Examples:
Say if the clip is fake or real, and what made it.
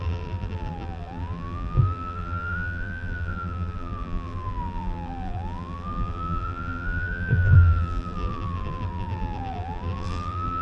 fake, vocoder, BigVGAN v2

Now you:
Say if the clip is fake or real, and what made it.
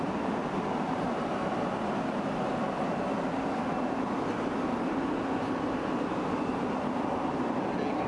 real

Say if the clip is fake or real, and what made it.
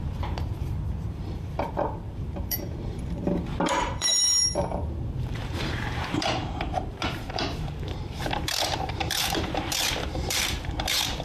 fake, vocoder, BigVGAN v2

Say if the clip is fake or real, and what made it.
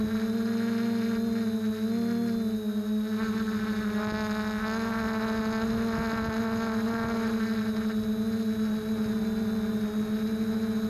real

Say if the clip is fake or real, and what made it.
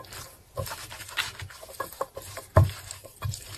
real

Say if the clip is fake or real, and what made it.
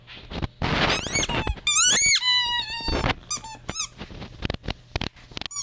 real